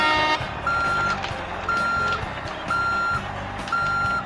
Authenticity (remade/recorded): recorded